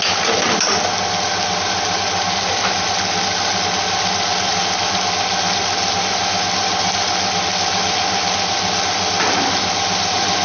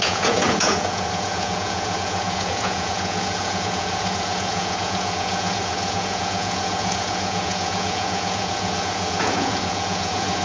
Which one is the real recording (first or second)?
first